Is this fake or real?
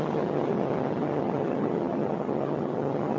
fake